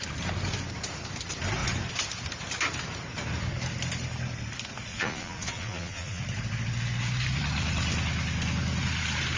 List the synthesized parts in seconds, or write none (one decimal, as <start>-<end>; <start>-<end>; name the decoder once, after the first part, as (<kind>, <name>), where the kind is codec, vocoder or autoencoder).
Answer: 4.9-6.2 (vocoder, Vocos)